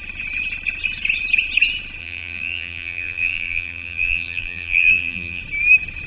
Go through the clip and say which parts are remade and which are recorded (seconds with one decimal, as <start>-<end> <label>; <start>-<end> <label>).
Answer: 0.0-2.0 recorded; 2.0-5.4 remade; 5.4-6.1 recorded